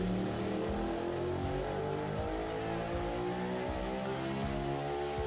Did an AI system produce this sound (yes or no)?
no